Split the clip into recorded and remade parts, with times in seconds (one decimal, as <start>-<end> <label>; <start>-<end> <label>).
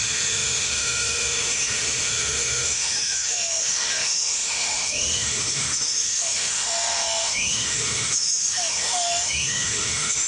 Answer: 0.0-10.3 remade